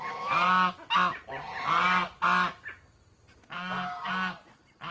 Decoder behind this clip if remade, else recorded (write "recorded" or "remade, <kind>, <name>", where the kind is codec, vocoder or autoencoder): recorded